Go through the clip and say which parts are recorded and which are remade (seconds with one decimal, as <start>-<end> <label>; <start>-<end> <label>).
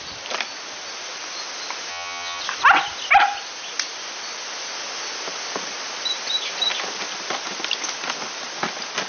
0.0-1.9 recorded; 1.9-2.4 remade; 2.4-9.1 recorded